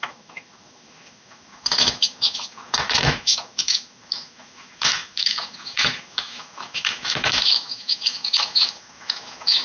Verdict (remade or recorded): remade